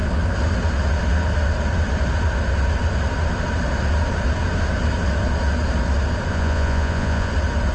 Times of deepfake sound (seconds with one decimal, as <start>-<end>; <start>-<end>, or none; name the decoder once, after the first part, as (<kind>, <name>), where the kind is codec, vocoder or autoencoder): 6.3-7.3 (vocoder, Vocos)